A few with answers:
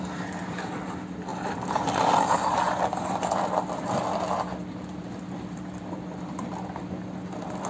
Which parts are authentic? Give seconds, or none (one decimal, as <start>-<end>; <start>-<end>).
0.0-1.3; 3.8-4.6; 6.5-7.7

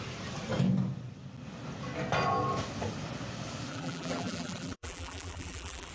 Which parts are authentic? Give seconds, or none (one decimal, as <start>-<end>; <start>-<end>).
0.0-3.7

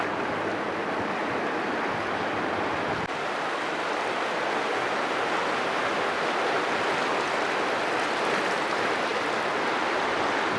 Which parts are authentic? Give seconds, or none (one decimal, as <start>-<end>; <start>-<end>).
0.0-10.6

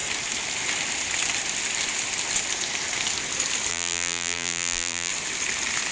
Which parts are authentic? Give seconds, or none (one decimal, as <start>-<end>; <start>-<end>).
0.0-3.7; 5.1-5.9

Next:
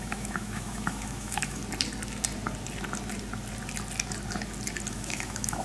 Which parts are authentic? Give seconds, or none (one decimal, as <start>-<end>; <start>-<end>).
1.6-4.9

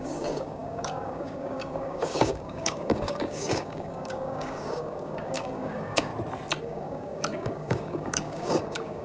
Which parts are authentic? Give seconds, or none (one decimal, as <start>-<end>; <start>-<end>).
6.1-6.6